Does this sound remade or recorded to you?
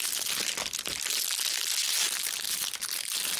recorded